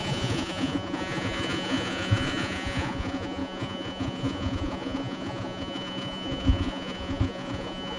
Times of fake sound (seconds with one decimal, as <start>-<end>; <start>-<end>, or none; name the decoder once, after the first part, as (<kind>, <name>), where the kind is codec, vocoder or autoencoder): 0.0-8.0 (vocoder, Vocos)